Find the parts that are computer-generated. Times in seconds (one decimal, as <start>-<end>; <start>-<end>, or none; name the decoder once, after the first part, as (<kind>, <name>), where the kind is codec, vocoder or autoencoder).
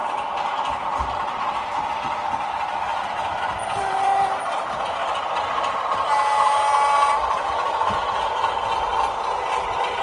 0.0-5.0 (vocoder, BigVGAN v2); 9.4-10.0